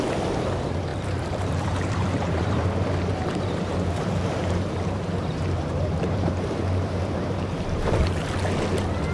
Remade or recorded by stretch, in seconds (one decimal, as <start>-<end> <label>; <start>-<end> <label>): 0.0-0.9 recorded; 0.9-2.6 remade; 2.6-3.1 recorded; 3.1-8.3 remade; 8.3-9.1 recorded